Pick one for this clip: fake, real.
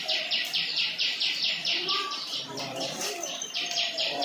fake